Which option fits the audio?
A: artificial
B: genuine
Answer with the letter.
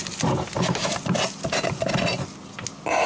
B